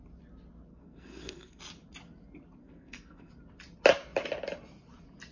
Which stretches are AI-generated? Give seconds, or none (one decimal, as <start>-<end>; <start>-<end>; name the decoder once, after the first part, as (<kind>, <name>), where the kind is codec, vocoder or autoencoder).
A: 0.7-1.6 (codec, SNAC); 2.6-3.3